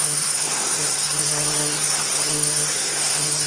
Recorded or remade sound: remade